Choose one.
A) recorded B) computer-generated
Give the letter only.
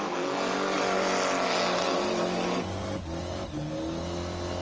A